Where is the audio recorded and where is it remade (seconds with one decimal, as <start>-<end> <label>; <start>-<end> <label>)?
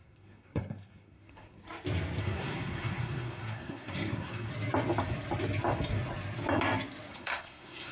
0.0-1.6 remade; 1.6-2.2 recorded; 2.2-4.5 remade; 4.5-7.1 recorded; 7.1-7.9 remade